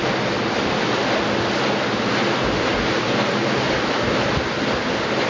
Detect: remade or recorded recorded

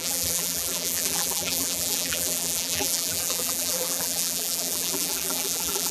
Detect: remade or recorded remade